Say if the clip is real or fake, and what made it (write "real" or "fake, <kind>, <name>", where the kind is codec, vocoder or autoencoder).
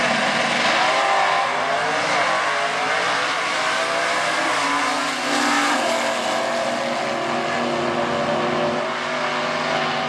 real